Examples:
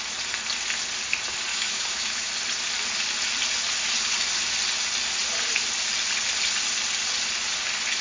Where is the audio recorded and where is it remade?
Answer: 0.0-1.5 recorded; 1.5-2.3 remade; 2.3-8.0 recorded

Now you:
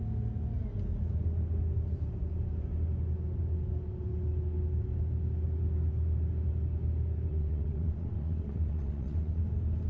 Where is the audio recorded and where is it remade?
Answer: 0.0-7.3 recorded; 7.3-9.4 remade; 9.4-9.9 recorded

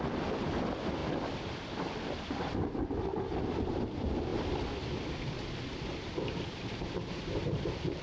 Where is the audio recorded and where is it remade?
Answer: 0.0-4.3 recorded; 4.3-5.3 remade; 5.3-5.9 recorded; 5.9-7.0 remade; 7.0-8.0 recorded

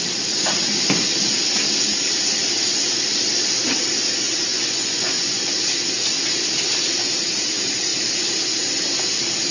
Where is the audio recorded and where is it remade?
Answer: 0.0-4.5 recorded; 4.5-5.4 remade; 5.4-9.5 recorded

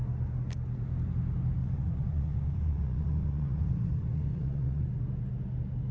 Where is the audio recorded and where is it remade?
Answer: 0.0-1.6 recorded; 1.6-4.8 remade; 4.8-5.9 recorded